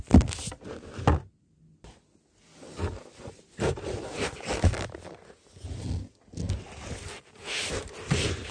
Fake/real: real